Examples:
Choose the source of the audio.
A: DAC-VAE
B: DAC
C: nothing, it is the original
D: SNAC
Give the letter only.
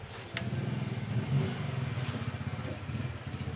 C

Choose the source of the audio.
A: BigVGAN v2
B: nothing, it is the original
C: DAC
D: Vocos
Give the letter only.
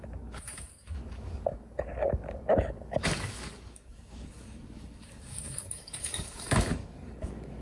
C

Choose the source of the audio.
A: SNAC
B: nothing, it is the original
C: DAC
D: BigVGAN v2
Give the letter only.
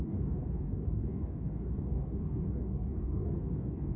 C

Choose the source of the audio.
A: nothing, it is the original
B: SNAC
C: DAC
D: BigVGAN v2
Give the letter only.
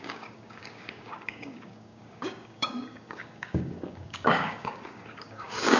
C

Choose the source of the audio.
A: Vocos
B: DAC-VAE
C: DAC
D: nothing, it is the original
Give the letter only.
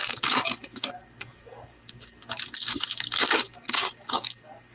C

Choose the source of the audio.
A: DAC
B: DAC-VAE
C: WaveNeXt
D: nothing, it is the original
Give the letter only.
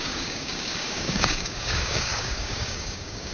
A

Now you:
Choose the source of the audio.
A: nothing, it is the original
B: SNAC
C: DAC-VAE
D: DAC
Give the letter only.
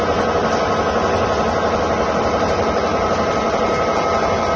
A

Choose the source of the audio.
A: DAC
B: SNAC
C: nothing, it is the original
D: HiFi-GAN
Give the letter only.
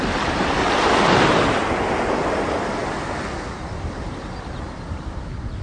C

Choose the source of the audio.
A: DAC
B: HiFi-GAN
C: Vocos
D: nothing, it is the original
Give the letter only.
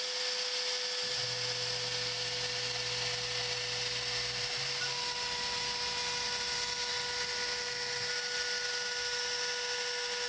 D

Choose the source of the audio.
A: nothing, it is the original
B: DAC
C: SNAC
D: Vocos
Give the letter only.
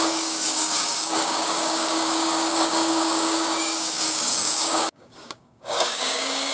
B